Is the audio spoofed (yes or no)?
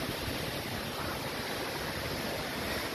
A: no